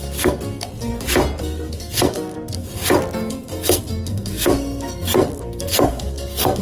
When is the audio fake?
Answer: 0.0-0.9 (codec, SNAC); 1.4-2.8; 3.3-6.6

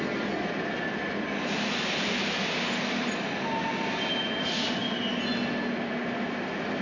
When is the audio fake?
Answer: none